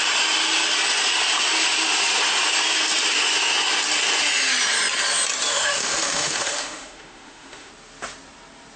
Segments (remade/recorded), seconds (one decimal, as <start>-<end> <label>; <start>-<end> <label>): 0.0-5.5 recorded; 5.5-7.7 remade; 7.7-8.8 recorded